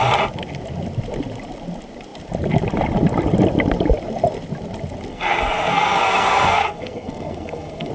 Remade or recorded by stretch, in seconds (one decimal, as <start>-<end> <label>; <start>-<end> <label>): 0.0-5.1 recorded; 5.1-7.9 remade